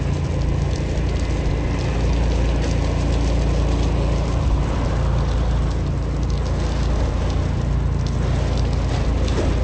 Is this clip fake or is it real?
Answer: real